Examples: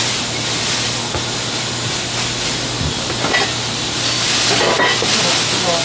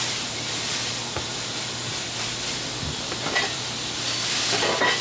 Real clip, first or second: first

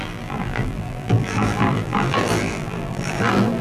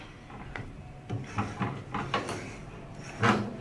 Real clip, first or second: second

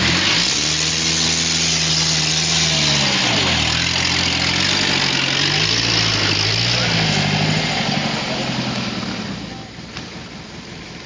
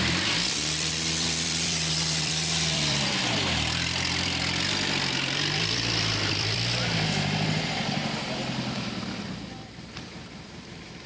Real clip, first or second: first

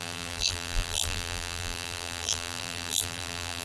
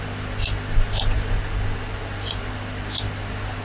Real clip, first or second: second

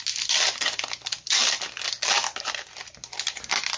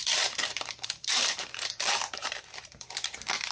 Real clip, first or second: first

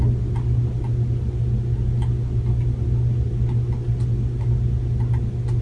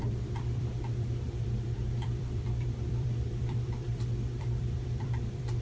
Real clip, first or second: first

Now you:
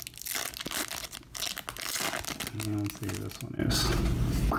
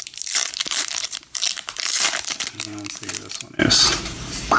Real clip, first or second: first